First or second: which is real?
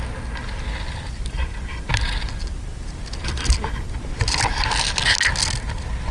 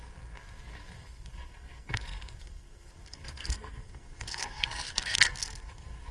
first